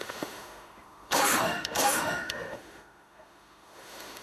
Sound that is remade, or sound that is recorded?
remade